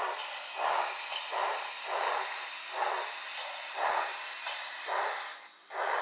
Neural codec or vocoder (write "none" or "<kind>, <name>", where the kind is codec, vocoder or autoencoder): none